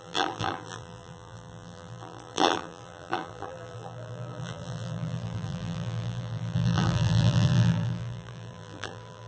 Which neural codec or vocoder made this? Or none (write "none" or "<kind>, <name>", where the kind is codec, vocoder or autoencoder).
vocoder, BigVGAN v2